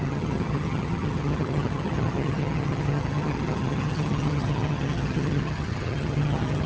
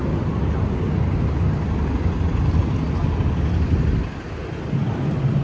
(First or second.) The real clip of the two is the second